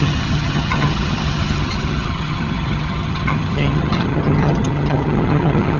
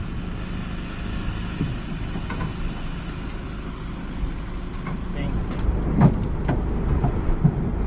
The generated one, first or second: first